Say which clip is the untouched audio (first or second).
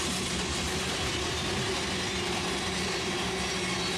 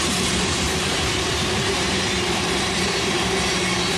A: first